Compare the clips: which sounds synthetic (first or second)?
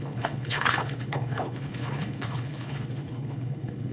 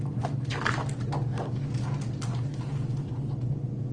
first